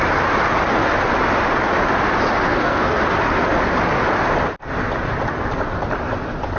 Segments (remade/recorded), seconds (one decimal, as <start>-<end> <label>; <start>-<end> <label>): 0.0-2.5 recorded; 2.5-3.0 remade; 3.0-6.6 recorded